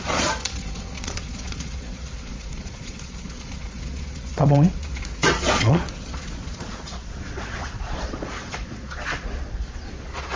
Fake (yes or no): yes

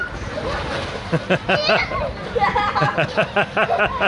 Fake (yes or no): no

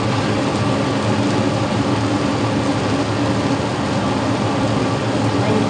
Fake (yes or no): no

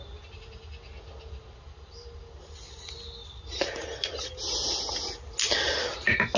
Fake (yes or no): no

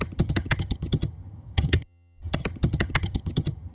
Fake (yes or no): yes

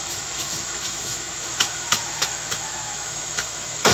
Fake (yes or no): yes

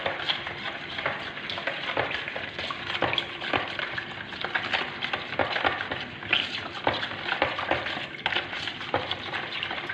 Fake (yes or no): no